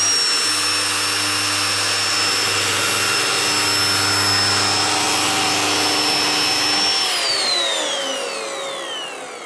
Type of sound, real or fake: real